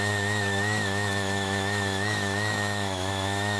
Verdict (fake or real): fake